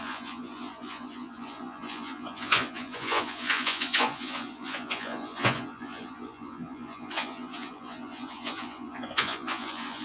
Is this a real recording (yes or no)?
no